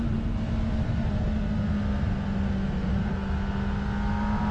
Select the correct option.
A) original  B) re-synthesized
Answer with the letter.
A